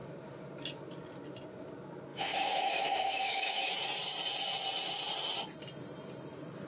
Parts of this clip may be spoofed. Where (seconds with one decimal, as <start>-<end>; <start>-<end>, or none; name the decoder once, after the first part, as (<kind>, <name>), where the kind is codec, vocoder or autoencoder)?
2.1-3.7 (autoencoder, DAC-VAE)